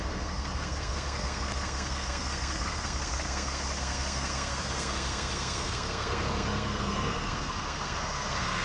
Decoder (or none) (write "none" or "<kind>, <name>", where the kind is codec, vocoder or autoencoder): codec, SNAC